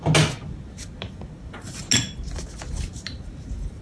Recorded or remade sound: recorded